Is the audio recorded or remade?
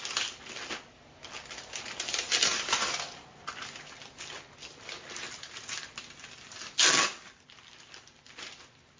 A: recorded